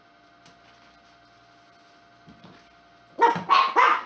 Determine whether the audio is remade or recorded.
recorded